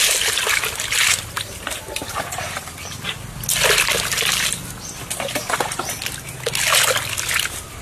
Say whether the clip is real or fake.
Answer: real